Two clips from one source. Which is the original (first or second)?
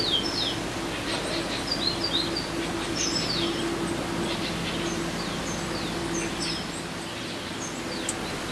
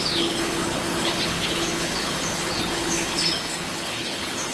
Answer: first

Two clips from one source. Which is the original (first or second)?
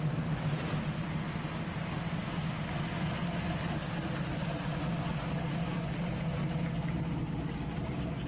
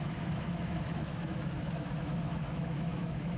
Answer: first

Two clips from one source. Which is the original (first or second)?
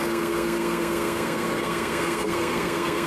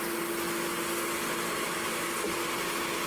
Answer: second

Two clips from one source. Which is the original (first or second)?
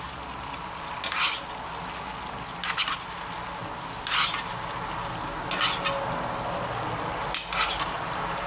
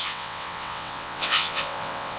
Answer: first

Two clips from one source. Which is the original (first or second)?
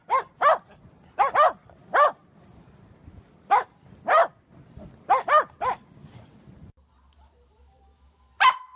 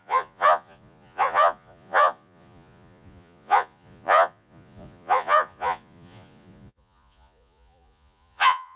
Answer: first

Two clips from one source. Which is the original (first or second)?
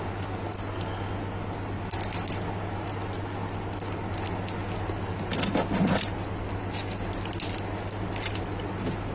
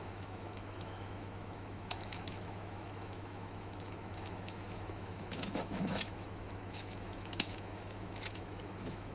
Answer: first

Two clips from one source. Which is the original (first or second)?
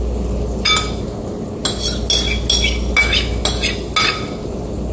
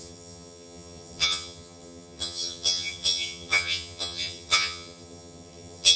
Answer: first